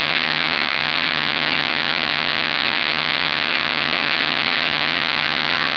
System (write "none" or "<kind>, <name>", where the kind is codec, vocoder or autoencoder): vocoder, HiFi-GAN